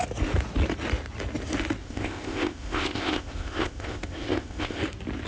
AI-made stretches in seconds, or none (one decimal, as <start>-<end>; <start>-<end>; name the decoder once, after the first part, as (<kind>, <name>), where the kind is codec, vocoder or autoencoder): 1.8-4.8 (codec, ZipCodec)